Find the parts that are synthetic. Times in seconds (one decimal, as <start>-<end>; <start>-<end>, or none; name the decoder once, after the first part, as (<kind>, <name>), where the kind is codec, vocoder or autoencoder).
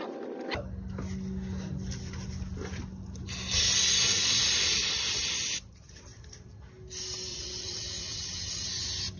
7.3-8.6 (vocoder, WaveNeXt)